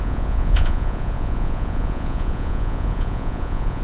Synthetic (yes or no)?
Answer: yes